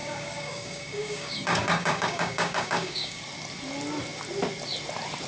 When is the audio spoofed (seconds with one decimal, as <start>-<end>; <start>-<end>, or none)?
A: 0.0-3.2

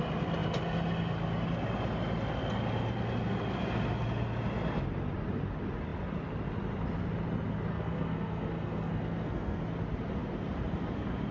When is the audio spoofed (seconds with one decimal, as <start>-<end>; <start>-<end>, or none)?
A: 7.7-9.6

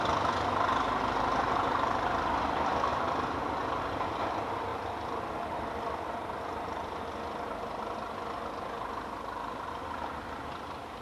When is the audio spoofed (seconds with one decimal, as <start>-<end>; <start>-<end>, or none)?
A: none